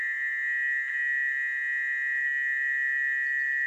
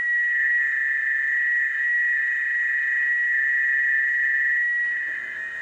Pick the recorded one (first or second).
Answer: first